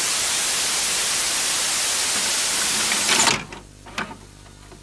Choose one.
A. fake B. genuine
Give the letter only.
B